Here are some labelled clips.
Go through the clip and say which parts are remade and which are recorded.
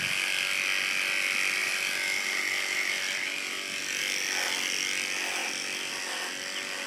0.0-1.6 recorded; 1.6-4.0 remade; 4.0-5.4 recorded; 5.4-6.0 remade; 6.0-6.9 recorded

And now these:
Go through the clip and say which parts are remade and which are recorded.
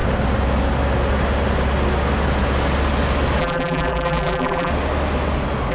0.0-3.4 recorded; 3.4-4.7 remade; 4.7-5.7 recorded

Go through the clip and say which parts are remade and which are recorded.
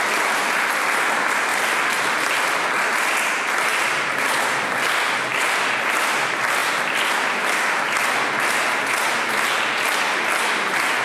0.0-1.5 recorded; 1.5-2.0 remade; 2.0-11.0 recorded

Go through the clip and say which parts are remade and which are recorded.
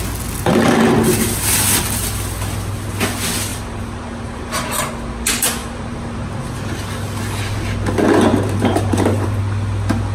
0.0-3.5 recorded; 3.5-4.9 remade; 4.9-5.6 recorded; 5.6-6.4 remade; 6.4-8.3 recorded; 8.3-9.4 remade; 9.4-10.1 recorded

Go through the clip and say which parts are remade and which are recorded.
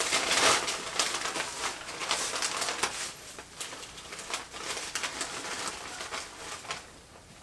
0.0-7.4 recorded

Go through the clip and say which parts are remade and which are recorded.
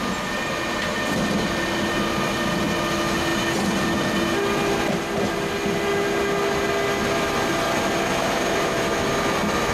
0.0-8.1 recorded; 8.1-8.8 remade; 8.8-9.7 recorded